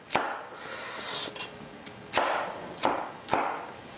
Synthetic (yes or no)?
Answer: no